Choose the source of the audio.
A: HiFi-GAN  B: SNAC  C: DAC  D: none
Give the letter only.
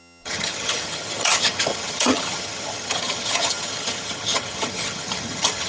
A